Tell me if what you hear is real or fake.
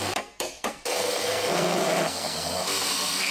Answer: fake